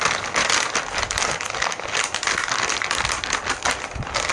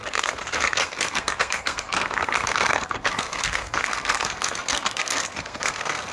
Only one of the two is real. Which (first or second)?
first